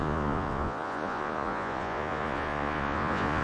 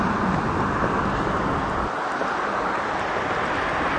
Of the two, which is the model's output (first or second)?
first